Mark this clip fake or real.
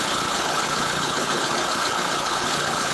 fake